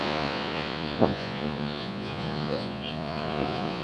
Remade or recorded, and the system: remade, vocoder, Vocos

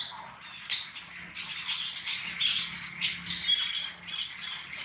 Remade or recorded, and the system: recorded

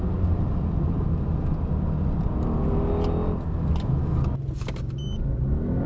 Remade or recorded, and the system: recorded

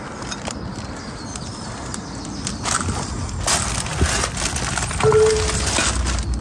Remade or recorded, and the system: recorded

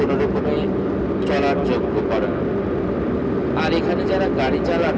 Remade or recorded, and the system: recorded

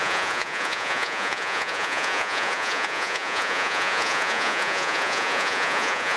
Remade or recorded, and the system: remade, vocoder, Vocos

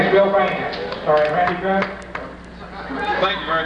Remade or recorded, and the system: recorded